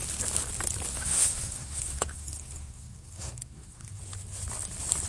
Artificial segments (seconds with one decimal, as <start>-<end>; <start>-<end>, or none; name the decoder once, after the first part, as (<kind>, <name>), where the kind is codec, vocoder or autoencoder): 0.9-4.0 (codec, SNAC)